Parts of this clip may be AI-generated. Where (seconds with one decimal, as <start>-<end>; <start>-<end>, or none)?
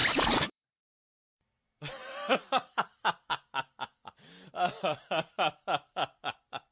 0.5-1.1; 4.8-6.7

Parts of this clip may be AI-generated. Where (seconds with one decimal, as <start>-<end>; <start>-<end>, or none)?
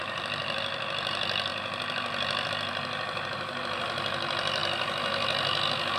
0.0-4.6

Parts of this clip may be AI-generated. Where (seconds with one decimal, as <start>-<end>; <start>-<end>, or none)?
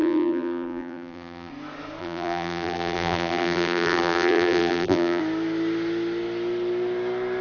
0.0-1.5; 2.0-5.2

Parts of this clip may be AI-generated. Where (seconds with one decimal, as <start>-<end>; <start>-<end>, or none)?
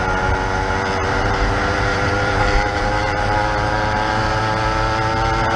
1.0-4.4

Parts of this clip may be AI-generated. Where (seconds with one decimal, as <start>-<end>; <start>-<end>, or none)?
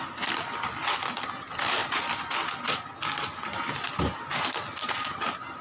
none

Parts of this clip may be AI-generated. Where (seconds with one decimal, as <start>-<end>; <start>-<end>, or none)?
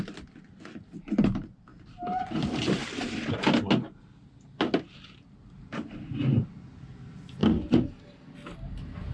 1.7-3.7